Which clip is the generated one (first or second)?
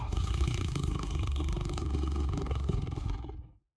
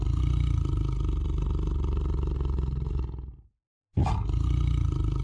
first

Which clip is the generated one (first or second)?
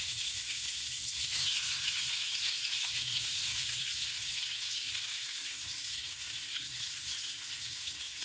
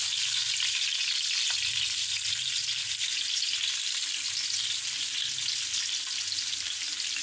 first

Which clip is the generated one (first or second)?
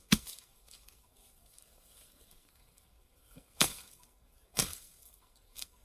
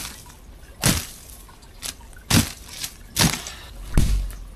first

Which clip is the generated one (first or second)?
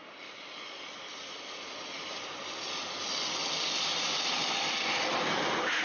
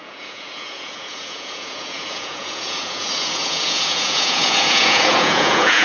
second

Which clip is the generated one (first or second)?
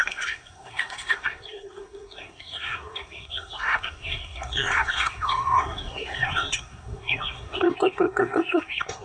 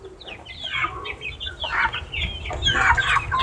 first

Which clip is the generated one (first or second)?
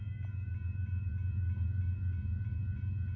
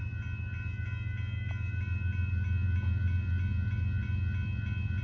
first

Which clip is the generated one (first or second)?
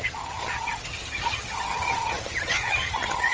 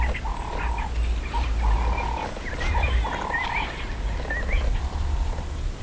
first